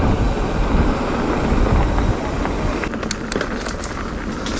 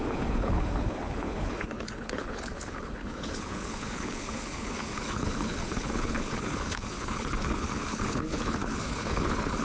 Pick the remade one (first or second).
second